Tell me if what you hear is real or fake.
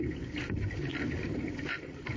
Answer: real